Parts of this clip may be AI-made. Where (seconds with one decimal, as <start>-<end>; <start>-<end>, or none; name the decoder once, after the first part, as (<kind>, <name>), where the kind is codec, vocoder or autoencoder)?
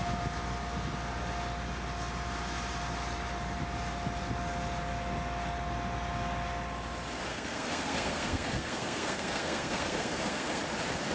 7.3-10.6 (codec, SNAC)